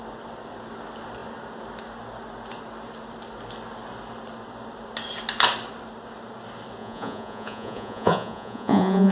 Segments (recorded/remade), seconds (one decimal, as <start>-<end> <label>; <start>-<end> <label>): 0.0-6.8 recorded; 6.8-9.1 remade